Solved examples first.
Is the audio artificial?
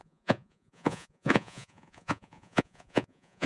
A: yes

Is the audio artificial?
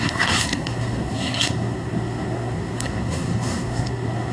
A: yes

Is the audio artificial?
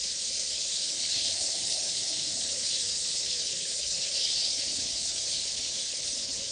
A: yes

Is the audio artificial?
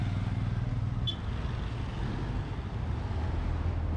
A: no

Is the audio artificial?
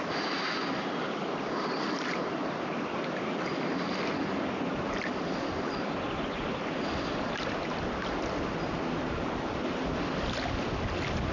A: no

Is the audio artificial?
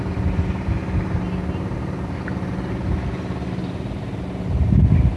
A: no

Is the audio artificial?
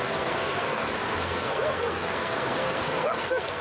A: yes